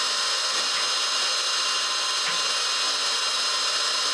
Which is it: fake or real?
real